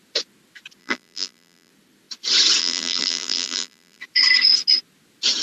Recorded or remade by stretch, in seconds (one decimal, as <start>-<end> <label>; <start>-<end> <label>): 0.0-0.8 recorded; 0.8-1.7 remade; 1.7-2.6 recorded; 2.6-4.0 remade; 4.0-5.4 recorded